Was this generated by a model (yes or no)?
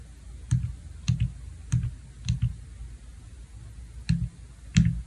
no